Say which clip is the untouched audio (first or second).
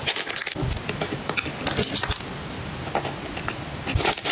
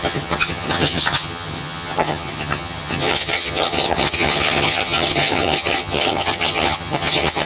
first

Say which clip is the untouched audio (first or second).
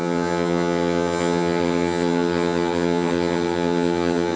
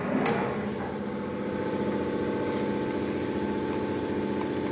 second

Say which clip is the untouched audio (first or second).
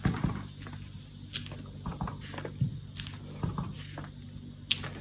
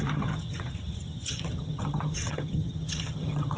first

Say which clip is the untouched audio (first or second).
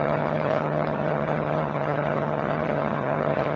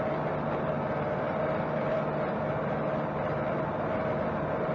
second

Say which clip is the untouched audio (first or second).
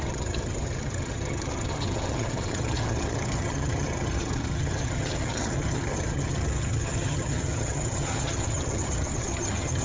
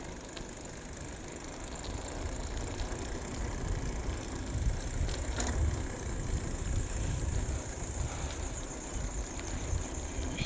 second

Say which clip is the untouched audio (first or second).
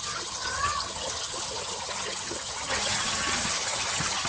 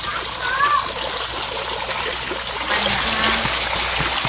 second